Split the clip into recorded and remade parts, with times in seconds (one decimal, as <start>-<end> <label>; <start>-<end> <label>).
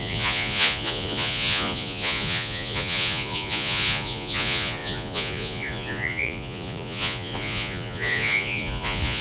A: 0.0-9.2 remade